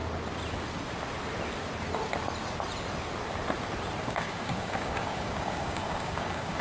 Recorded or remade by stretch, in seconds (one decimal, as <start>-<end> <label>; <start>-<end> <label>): 0.0-4.0 recorded; 4.0-6.6 remade